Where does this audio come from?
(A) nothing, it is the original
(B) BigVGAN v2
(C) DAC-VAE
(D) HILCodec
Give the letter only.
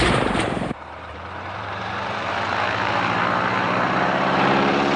B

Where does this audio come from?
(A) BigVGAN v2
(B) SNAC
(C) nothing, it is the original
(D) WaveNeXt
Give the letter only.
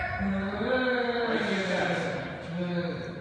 C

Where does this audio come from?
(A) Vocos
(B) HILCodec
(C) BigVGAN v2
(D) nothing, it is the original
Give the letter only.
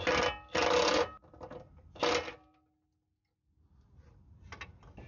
D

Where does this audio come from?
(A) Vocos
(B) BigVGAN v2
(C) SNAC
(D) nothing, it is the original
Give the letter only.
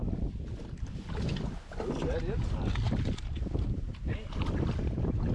D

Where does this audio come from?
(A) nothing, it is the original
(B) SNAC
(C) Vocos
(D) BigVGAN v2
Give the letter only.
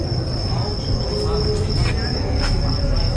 A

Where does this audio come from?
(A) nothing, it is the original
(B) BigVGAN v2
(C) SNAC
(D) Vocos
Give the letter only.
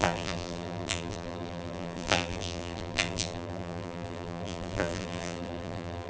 B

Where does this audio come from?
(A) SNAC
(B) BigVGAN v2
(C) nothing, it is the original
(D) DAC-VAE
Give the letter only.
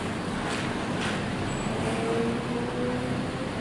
C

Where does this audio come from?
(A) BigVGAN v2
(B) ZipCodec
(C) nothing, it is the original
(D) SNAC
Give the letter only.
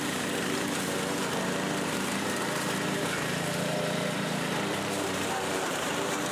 A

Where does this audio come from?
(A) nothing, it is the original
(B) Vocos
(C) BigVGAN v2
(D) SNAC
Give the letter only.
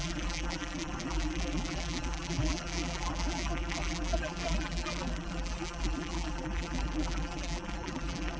C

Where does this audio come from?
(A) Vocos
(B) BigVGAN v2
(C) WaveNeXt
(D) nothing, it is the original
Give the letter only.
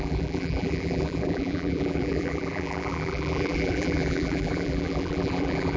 B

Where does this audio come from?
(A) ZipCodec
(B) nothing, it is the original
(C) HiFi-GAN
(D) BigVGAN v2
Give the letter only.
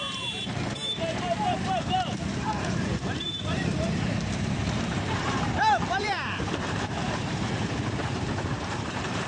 D